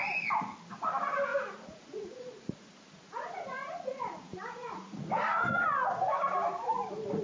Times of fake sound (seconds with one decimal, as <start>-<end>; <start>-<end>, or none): 1.3-5.1

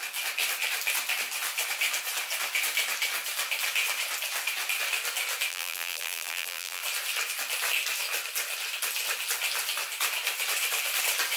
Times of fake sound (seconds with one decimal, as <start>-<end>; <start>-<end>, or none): 5.5-6.8

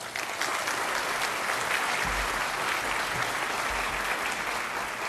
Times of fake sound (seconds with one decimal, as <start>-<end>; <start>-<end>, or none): none

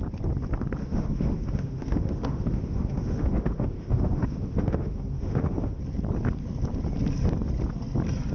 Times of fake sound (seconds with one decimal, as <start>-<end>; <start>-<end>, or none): 0.8-5.8

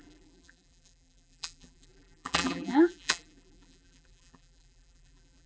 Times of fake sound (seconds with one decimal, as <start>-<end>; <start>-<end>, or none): 0.0-5.5

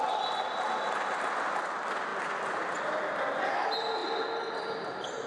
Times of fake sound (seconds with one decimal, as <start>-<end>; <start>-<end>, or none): none

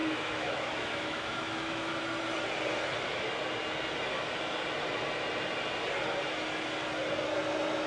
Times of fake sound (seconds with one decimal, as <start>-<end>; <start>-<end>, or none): 0.0-2.0

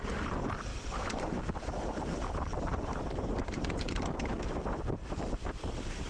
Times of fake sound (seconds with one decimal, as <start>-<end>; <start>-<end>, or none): 0.7-1.4; 2.7-4.3; 5.0-5.5